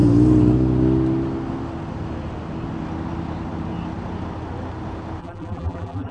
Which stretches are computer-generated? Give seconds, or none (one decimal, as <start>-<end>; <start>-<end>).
5.2-6.1